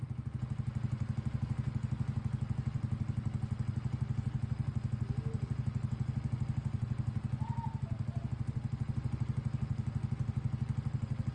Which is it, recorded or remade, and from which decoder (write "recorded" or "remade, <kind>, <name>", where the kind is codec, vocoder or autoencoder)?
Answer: recorded